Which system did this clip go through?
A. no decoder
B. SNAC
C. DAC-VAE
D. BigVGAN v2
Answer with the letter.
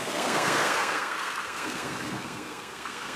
B